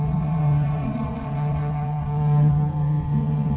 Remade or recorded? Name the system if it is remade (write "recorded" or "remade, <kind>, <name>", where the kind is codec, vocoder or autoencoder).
remade, vocoder, WaveNeXt